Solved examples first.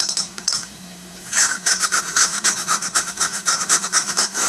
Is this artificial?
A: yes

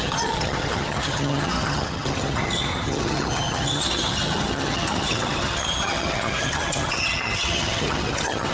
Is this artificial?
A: yes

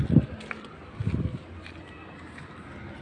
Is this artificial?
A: no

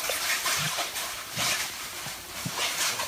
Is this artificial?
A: yes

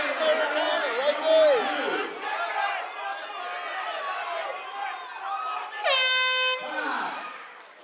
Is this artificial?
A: no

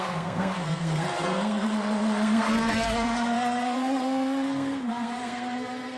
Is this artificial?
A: yes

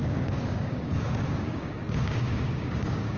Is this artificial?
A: yes